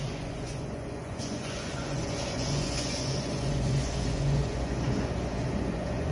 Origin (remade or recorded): remade